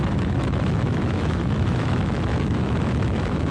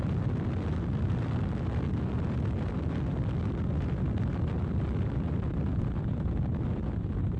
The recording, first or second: second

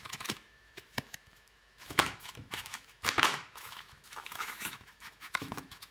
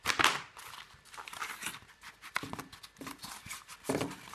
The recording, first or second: second